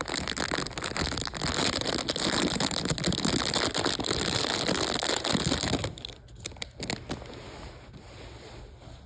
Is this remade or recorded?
recorded